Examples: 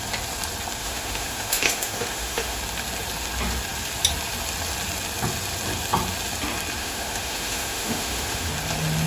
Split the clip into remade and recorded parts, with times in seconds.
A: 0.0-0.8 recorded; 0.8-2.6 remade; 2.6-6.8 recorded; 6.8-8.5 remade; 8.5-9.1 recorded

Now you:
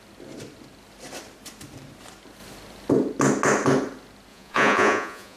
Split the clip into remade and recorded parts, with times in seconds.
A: 0.0-4.3 recorded; 4.3-5.4 remade

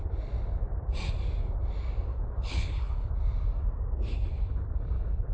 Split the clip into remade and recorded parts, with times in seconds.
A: 0.0-2.1 recorded; 2.1-3.1 remade; 3.1-5.3 recorded

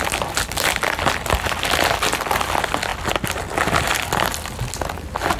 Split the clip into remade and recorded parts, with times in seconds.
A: 0.0-5.4 recorded